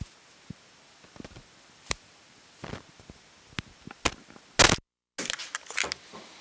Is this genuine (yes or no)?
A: yes